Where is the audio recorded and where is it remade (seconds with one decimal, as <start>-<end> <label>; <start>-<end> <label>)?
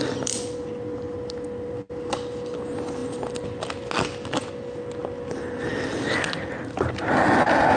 0.0-7.8 recorded